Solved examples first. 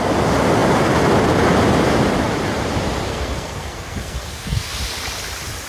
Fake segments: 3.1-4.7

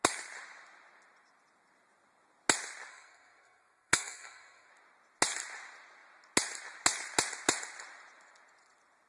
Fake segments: 2.9-4.7

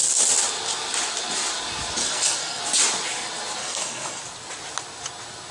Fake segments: 2.0-2.6; 3.6-4.2

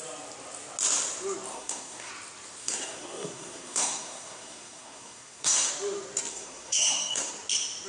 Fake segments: 1.5-2.1; 2.6-5.7; 6.3-7.3

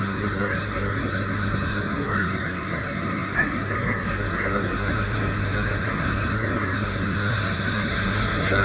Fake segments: 0.0-8.6

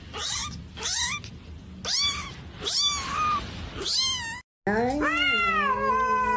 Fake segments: none

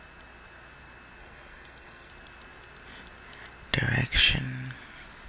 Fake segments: 1.2-2.1